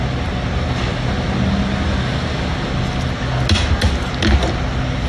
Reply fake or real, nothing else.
real